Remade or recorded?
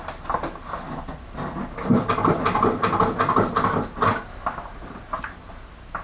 recorded